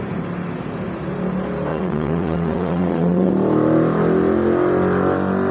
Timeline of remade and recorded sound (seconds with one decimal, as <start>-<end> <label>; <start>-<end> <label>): 0.0-1.7 recorded; 1.7-3.3 remade; 3.3-5.5 recorded